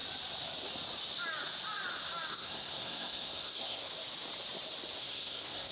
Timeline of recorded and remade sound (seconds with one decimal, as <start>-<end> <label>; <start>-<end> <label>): 0.0-2.3 recorded; 2.3-3.9 remade; 3.9-5.0 recorded; 5.0-5.7 remade